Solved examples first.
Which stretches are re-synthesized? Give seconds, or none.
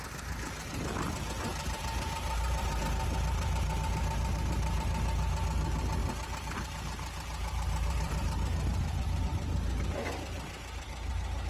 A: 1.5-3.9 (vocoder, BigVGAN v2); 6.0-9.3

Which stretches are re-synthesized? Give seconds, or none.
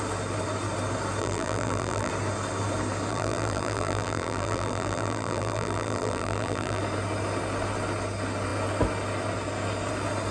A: 1.2-2.1 (vocoder, BigVGAN v2); 3.1-6.8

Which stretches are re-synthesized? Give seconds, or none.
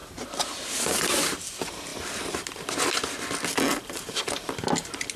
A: 0.0-0.8 (vocoder, BigVGAN v2)